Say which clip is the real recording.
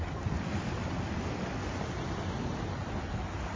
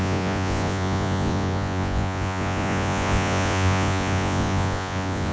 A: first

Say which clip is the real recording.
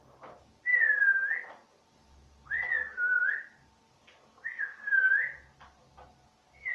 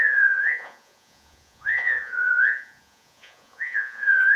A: first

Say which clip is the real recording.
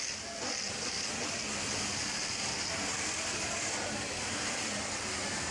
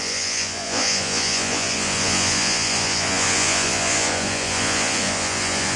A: first